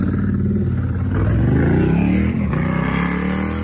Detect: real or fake real